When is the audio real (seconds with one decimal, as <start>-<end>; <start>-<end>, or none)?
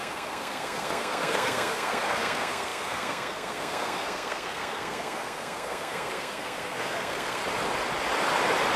7.4-8.8